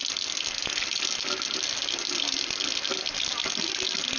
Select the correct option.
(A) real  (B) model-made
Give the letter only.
A